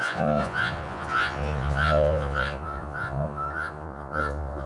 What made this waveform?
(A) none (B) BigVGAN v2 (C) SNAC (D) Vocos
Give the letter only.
D